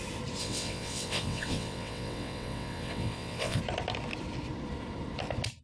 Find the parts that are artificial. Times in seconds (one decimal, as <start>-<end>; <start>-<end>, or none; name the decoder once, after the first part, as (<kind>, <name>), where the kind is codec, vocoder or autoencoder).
0.4-3.6 (vocoder, WaveNeXt)